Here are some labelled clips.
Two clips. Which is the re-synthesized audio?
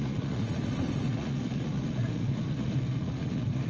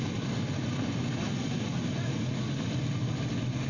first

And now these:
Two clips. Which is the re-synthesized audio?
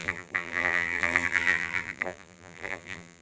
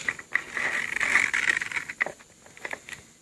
first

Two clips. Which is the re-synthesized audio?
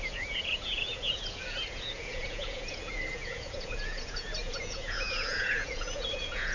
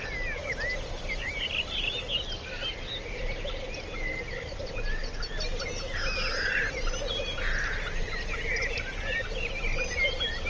first